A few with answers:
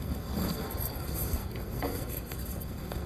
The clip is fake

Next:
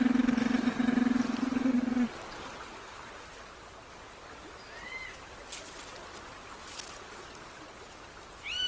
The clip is real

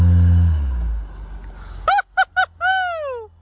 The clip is real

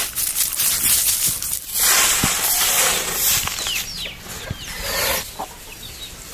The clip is real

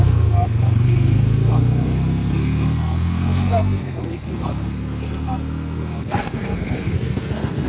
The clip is fake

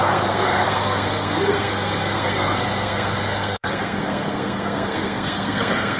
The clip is fake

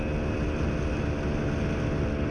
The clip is real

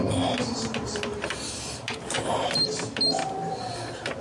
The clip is real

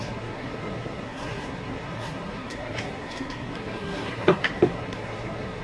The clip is fake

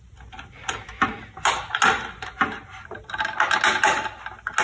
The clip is real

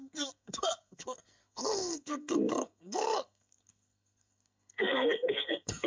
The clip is fake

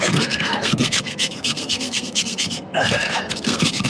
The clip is fake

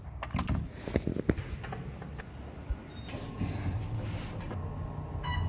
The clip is real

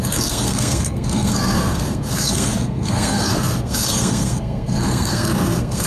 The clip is fake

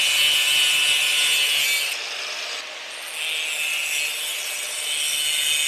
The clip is real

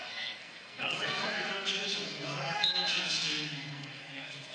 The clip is fake